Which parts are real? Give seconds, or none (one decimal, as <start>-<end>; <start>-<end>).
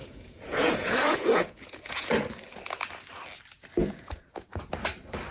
2.1-3.8; 4.7-5.3